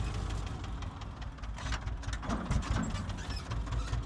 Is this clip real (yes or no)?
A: yes